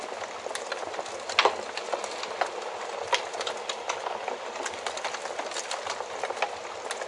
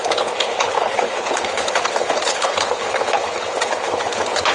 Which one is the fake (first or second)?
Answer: second